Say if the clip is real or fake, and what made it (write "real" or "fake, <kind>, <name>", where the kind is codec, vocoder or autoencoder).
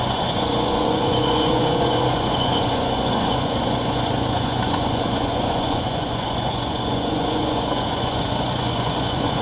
fake, vocoder, Vocos